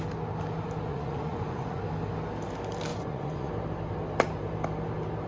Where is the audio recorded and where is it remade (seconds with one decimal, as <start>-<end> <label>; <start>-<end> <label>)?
0.0-0.9 recorded; 0.9-1.8 remade; 1.8-2.9 recorded; 2.9-3.5 remade; 3.5-5.3 recorded